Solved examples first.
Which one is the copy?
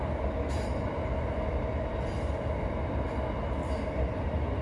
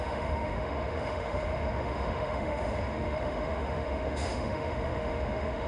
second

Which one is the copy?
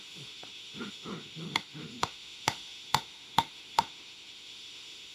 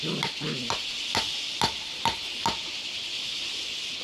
first